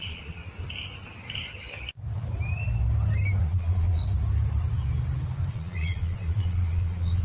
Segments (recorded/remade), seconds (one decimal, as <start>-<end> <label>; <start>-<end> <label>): 0.0-0.4 remade; 0.4-3.4 recorded; 3.4-4.0 remade; 4.0-5.5 recorded; 5.5-7.2 remade